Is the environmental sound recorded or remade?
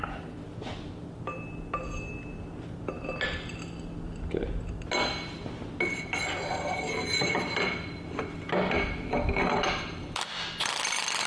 recorded